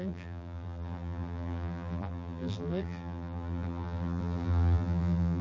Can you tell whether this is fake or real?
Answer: fake